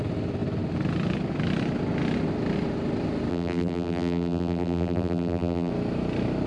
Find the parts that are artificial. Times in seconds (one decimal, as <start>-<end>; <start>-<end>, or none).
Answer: 3.3-5.7